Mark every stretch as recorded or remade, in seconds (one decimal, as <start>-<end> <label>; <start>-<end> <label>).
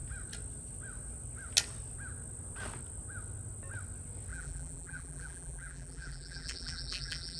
0.0-4.3 recorded; 4.3-7.4 remade